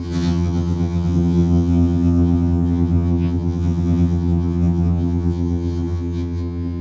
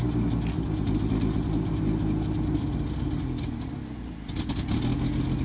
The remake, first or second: first